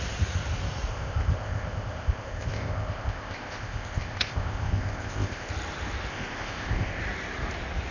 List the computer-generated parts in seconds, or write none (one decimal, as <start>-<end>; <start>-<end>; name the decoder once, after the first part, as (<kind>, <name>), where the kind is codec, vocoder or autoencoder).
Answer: 0.9-5.5 (codec, ZipCodec); 6.1-7.0